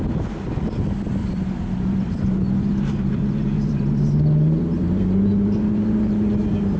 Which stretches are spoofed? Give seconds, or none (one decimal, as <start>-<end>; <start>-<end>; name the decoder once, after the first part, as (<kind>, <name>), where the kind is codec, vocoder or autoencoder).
1.2-5.0 (vocoder, BigVGAN v2)